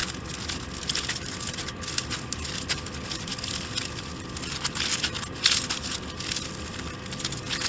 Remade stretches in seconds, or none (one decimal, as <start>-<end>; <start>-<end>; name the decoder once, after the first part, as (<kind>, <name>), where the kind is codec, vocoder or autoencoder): 0.0-7.7 (vocoder, BigVGAN v2)

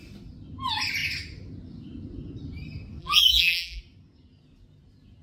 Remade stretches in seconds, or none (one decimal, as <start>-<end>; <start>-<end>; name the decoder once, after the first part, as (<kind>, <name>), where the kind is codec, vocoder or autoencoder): 3.0-3.8 (vocoder, BigVGAN v2)